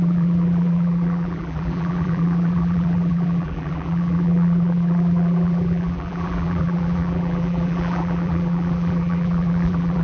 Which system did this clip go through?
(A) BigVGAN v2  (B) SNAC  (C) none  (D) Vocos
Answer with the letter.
A